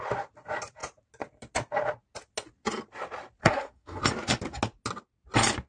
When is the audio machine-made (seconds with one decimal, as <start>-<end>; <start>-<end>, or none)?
3.4-4.0